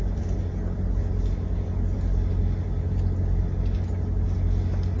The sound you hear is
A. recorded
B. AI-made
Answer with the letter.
A